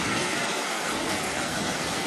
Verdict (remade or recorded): remade